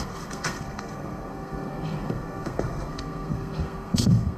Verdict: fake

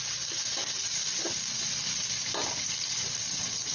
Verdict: real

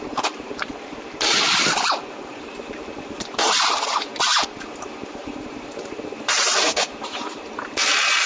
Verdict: fake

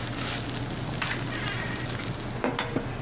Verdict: real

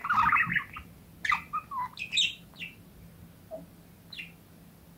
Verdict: real